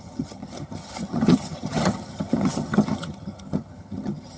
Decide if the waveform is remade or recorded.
remade